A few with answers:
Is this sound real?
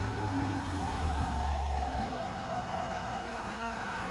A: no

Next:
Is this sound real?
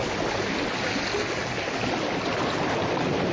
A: yes